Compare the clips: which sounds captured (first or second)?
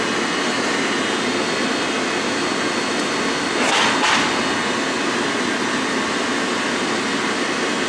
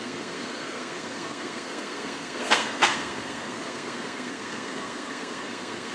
first